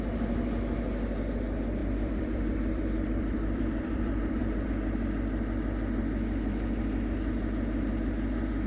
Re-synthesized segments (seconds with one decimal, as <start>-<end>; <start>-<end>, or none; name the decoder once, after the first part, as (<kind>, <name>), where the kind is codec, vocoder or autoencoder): 1.8-4.7 (vocoder, BigVGAN v2)